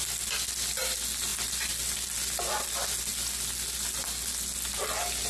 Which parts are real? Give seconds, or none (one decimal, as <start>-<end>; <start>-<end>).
0.0-5.3